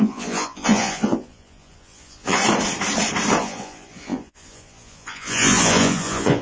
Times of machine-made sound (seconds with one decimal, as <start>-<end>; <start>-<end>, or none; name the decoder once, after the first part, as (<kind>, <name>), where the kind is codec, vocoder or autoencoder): 0.0-2.4 (vocoder, Vocos); 3.4-6.4